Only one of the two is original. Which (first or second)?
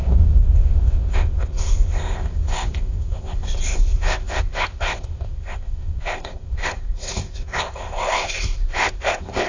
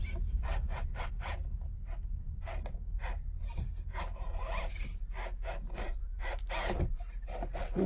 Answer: second